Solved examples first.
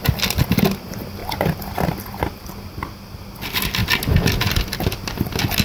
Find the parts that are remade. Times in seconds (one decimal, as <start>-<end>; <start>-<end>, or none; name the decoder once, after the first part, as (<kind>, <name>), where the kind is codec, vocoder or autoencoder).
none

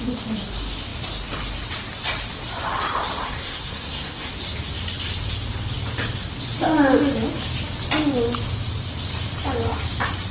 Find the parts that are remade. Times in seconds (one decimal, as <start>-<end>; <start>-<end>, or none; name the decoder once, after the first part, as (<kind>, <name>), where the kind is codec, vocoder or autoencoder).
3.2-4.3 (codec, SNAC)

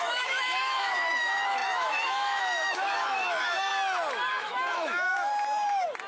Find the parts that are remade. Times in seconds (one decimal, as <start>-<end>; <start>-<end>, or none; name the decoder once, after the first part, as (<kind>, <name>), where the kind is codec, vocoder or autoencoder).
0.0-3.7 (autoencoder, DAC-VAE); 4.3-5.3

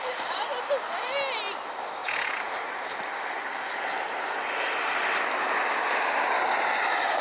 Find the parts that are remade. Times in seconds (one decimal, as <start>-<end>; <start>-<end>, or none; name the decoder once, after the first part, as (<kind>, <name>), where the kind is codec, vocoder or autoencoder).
2.0-2.5 (vocoder, Vocos)

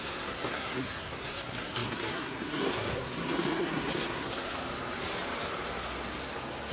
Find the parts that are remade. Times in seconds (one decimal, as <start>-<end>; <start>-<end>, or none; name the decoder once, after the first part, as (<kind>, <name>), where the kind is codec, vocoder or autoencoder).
0.0-4.6 (codec, SNAC)

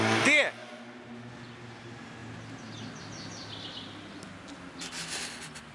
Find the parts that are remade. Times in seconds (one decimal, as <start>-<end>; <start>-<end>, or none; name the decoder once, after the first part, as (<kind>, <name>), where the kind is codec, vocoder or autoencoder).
none

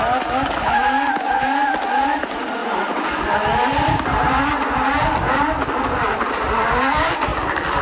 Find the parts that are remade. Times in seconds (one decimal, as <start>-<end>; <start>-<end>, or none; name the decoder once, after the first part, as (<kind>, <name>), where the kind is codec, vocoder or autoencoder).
none

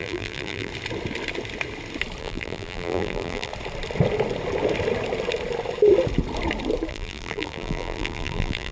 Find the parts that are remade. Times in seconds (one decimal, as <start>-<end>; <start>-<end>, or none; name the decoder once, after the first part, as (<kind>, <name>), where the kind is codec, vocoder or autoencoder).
0.0-0.7 (vocoder, BigVGAN v2); 2.2-3.5; 6.9-8.7